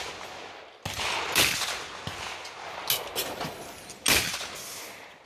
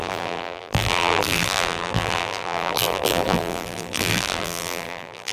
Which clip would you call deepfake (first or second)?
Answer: second